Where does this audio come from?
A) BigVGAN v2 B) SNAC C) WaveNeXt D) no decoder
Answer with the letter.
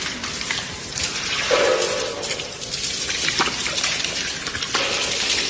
D